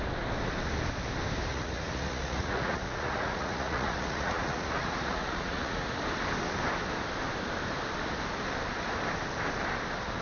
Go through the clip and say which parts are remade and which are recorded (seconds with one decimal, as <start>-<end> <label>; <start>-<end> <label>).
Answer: 0.0-1.5 recorded; 1.5-6.0 remade; 6.0-10.2 recorded